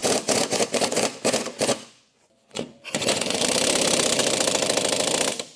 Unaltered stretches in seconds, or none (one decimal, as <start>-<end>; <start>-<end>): 3.4-5.6